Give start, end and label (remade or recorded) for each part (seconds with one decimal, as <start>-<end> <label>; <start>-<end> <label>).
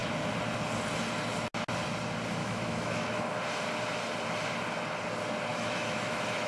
0.0-2.4 recorded; 2.4-3.2 remade; 3.2-5.5 recorded; 5.5-6.5 remade